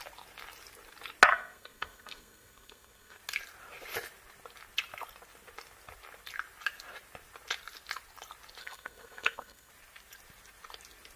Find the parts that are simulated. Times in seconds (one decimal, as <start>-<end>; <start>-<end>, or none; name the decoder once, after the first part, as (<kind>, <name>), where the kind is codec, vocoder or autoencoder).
1.3-3.2 (codec, SNAC); 8.6-9.7